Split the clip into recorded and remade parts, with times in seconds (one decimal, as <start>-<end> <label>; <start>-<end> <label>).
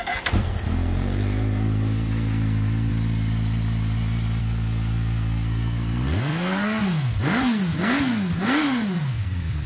0.0-2.9 remade; 2.9-4.4 recorded; 4.4-9.7 remade